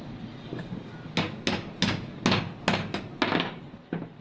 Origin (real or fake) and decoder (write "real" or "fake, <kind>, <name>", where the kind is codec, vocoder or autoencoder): real